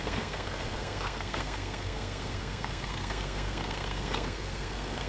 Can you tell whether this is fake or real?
fake